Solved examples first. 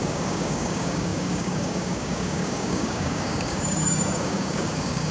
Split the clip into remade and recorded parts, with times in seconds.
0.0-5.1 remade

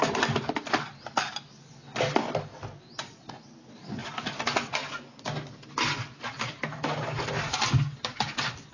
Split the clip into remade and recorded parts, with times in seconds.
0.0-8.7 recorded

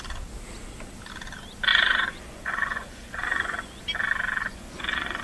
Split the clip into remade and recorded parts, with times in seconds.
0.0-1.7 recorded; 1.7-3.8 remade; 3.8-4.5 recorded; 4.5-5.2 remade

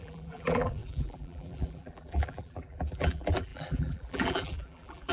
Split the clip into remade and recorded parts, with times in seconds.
0.0-5.1 remade

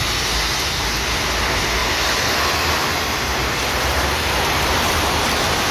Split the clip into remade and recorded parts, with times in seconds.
0.0-1.8 recorded; 1.8-5.2 remade; 5.2-5.7 recorded

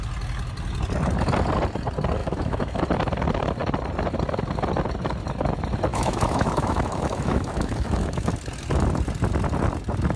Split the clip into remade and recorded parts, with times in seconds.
0.0-2.2 recorded; 2.2-2.8 remade; 2.8-5.9 recorded; 5.9-8.3 remade; 8.3-10.2 recorded

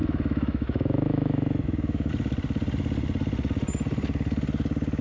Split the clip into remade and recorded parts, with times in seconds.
0.0-2.1 remade; 2.1-5.0 recorded

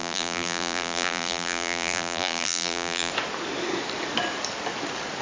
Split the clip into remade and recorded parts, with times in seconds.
0.0-3.1 remade; 3.1-5.2 recorded